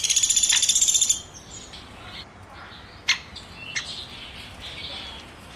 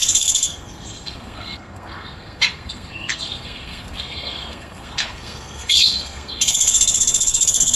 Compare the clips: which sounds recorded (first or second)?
first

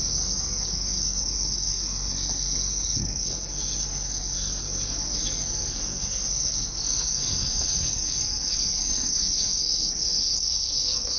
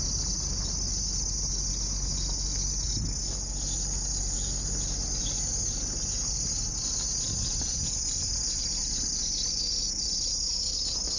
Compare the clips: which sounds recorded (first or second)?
second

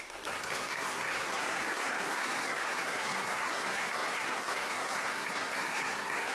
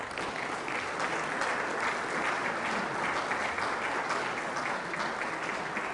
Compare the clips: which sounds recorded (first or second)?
second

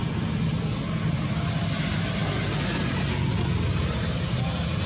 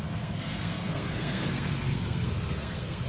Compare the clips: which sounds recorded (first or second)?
first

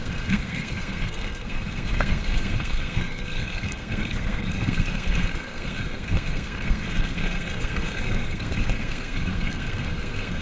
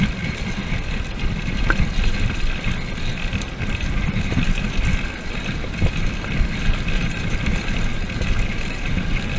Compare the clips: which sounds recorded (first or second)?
second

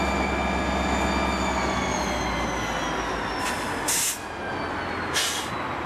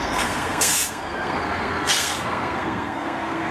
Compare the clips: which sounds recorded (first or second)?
first